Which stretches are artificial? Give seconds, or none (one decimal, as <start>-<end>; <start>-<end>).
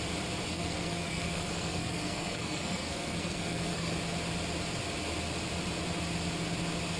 0.5-3.9